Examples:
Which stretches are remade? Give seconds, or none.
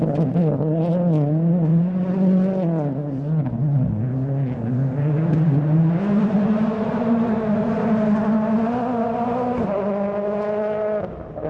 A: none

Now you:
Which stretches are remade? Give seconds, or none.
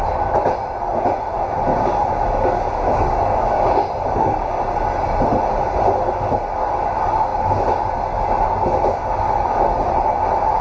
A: 1.7-4.5 (codec, DAC)